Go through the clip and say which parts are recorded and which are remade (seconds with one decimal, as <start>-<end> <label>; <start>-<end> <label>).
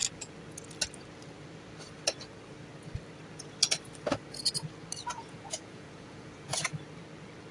0.0-5.1 recorded; 5.1-6.6 remade; 6.6-7.5 recorded